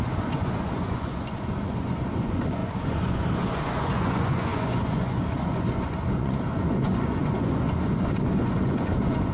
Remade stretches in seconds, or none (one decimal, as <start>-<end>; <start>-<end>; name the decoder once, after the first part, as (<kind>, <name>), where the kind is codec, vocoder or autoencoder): 0.0-9.3 (vocoder, Vocos)